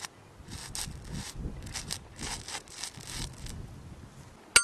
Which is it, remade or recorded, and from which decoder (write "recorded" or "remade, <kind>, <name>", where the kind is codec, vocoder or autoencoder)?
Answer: recorded